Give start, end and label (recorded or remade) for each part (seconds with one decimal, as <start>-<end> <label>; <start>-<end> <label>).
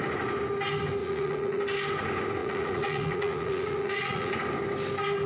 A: 0.0-1.0 recorded; 1.0-1.6 remade; 1.6-2.4 recorded; 2.4-4.3 remade; 4.3-5.3 recorded